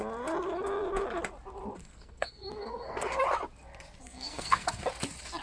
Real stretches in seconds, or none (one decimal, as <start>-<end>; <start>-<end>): 0.0-1.8; 3.2-4.0; 4.8-5.4